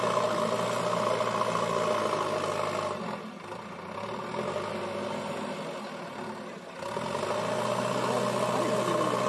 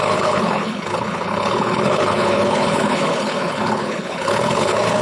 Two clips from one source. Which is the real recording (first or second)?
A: first